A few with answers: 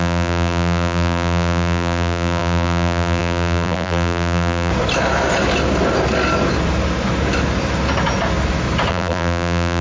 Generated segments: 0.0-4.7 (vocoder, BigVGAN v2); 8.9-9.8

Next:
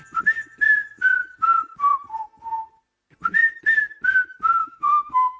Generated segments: 4.6-5.4 (autoencoder, DAC-VAE)

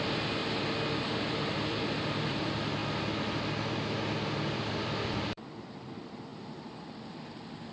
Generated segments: 0.0-0.4 (vocoder, BigVGAN v2); 1.0-2.8; 4.2-7.7

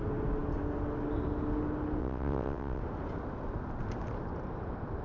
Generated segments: 2.0-2.8 (vocoder, WaveNeXt)